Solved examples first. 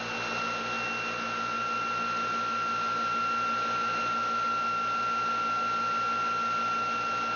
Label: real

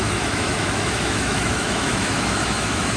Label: fake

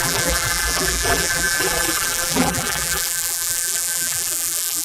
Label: fake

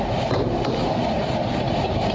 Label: real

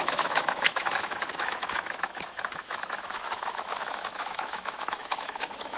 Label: fake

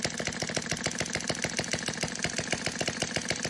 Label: real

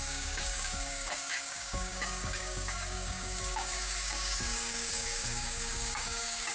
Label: fake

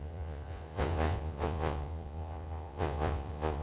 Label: fake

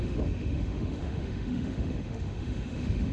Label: fake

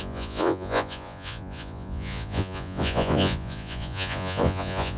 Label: fake